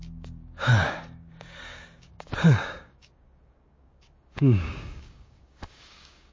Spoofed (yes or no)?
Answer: yes